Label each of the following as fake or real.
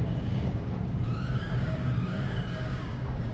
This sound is fake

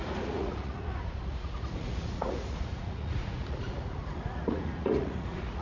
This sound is fake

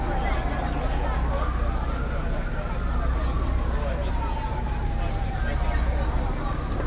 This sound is real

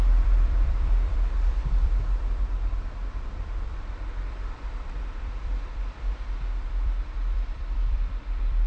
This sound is fake